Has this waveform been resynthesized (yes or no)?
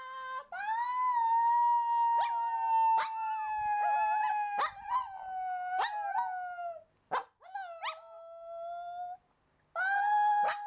no